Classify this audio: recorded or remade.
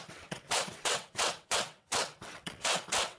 remade